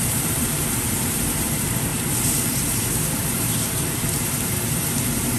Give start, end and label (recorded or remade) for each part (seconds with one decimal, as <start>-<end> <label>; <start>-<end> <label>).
0.0-5.4 remade